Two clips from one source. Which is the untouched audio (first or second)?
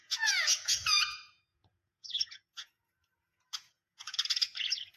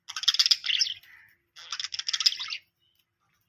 second